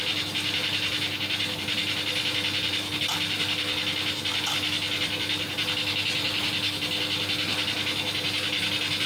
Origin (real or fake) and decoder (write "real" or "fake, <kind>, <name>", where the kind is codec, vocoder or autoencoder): real